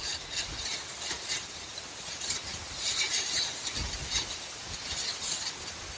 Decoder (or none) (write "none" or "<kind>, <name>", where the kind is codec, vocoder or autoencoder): none